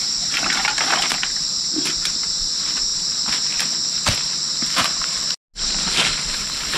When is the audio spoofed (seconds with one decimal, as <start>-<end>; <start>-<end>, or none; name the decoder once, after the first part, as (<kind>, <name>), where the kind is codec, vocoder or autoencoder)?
none